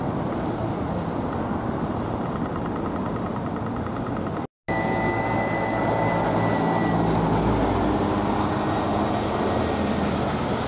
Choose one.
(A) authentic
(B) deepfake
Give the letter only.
A